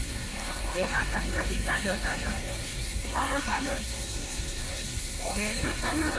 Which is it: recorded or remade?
remade